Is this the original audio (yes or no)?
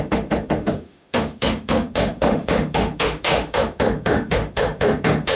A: no